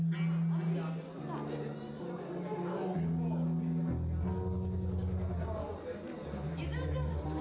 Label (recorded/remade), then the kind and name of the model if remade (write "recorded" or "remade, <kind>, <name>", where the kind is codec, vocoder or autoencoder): recorded